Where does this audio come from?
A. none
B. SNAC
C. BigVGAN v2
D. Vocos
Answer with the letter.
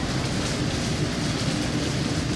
A